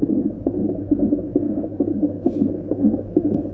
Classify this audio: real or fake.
fake